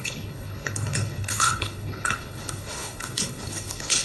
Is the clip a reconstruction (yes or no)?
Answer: yes